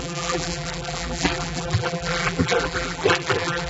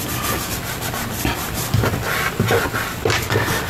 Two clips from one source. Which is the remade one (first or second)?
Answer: first